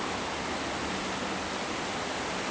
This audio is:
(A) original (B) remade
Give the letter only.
A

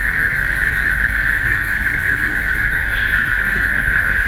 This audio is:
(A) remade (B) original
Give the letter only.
A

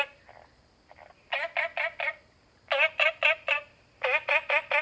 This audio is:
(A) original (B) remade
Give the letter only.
A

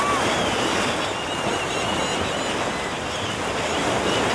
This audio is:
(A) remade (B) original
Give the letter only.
B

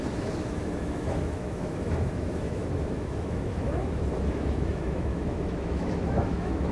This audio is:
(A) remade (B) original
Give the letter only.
A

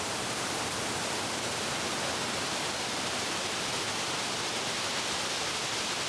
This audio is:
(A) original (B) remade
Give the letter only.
A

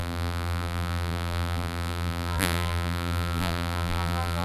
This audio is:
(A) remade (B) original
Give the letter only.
A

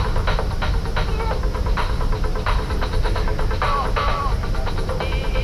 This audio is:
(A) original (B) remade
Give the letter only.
A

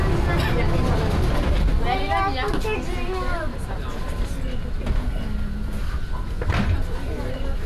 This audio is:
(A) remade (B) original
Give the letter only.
B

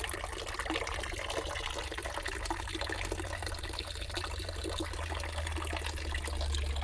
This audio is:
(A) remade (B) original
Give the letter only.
B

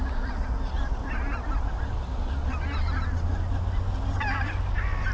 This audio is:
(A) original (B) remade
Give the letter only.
A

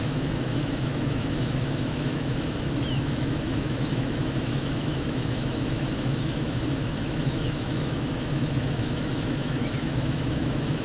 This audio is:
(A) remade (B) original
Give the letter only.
A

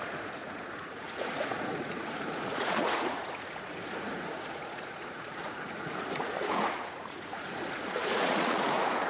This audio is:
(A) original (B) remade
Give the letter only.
B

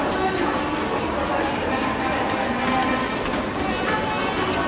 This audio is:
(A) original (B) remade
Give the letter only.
A